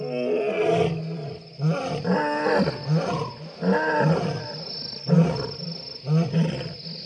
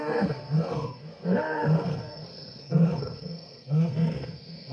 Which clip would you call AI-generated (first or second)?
second